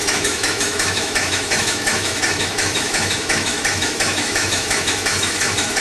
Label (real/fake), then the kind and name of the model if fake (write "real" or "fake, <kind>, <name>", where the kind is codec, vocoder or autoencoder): fake, autoencoder, DAC-VAE